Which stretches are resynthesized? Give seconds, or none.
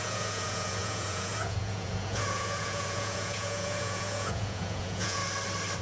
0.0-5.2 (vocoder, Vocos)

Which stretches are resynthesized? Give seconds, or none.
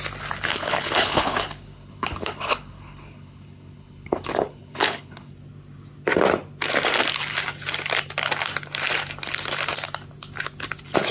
0.5-5.3 (codec, HILCodec)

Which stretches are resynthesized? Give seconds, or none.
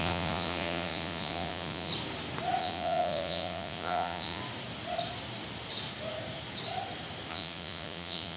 0.0-1.9 (vocoder, Vocos); 2.6-4.4; 7.3-8.4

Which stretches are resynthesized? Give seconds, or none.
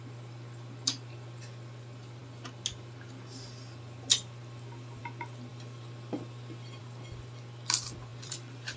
5.5-6.8 (vocoder, BigVGAN v2); 8.1-8.8